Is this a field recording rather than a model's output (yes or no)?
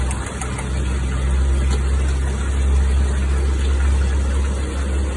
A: yes